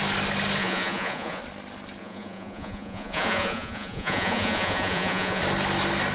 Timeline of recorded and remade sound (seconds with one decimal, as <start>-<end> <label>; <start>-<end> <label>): 0.0-0.6 recorded; 0.6-1.4 remade; 1.4-2.0 recorded; 2.0-5.4 remade; 5.4-6.1 recorded